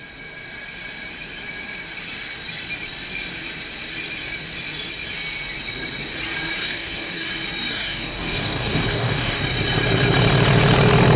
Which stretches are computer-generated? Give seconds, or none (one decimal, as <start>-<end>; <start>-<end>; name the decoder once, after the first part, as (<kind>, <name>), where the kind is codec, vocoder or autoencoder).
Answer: 6.6-7.3 (codec, DAC); 7.7-9.4

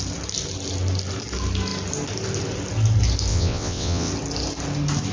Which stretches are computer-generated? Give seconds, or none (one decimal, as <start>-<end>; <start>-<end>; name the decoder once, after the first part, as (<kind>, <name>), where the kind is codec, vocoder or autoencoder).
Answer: 3.3-4.1 (vocoder, WaveNeXt)

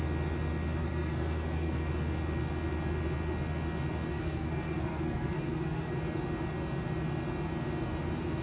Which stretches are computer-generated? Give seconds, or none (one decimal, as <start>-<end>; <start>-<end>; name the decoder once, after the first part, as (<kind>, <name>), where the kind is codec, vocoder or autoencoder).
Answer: 0.8-1.9 (codec, SNAC); 4.1-5.9

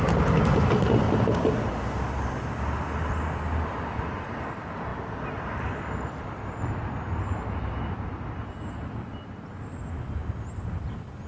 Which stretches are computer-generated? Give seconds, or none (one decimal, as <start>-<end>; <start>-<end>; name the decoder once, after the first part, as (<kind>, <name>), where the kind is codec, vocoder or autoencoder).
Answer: none

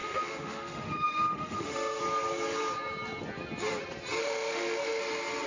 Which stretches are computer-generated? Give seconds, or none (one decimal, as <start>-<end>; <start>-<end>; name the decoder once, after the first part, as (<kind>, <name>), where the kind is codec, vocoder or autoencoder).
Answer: 0.0-2.0 (autoencoder, DAC-VAE); 4.2-5.0

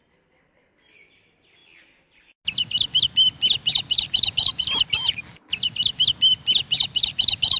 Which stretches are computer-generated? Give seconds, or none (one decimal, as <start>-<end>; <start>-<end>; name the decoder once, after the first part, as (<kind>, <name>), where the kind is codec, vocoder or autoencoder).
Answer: none

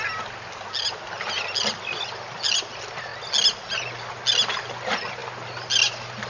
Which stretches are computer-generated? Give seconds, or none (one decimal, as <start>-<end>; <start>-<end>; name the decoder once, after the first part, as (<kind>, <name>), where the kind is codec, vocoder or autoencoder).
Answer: none

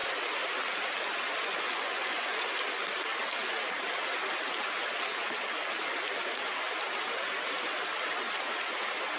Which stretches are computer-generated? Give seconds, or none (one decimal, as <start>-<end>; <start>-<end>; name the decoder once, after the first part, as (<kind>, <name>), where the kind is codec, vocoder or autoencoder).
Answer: 1.4-2.5 (vocoder, Vocos)